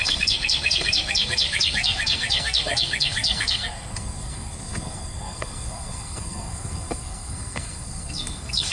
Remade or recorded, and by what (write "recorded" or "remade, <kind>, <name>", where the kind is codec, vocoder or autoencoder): remade, codec, SNAC